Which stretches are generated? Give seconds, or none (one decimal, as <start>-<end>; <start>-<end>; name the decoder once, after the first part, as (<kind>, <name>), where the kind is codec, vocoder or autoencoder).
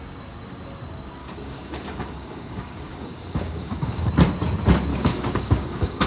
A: 1.2-4.1 (codec, DAC); 4.9-6.1